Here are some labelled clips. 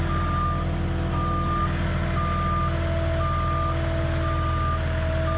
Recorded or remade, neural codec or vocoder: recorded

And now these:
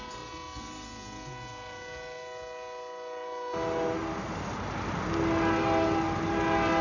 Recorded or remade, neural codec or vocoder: recorded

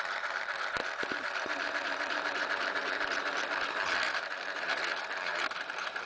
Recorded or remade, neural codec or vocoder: remade, vocoder, BigVGAN v2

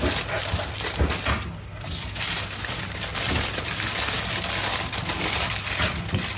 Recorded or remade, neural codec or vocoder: recorded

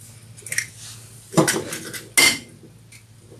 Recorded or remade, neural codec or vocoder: recorded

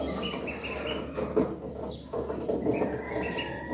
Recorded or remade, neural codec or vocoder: recorded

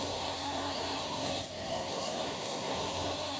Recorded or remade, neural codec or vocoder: remade, codec, SNAC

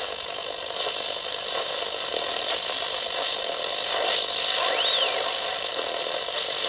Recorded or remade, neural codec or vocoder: recorded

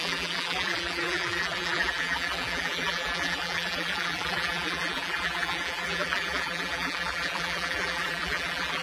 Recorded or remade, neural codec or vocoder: remade, vocoder, BigVGAN v2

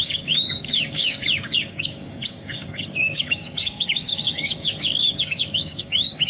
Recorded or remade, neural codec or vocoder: remade, codec, DAC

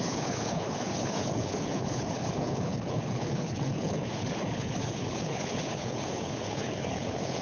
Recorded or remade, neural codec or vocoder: remade, codec, HILCodec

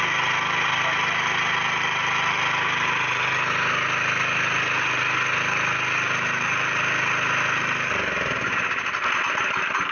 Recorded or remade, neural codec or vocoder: recorded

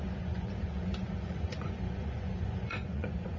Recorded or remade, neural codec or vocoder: remade, vocoder, Vocos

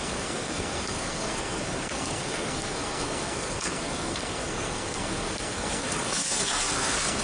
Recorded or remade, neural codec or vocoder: remade, codec, SNAC